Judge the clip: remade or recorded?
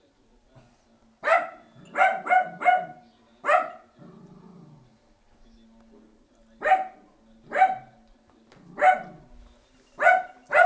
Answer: recorded